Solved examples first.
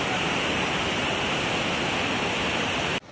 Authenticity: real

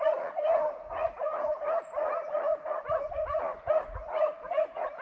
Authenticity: fake